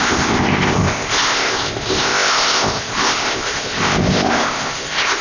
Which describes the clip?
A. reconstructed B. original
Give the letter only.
A